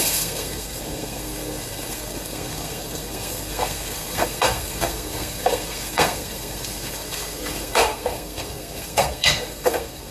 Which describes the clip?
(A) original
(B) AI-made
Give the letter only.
B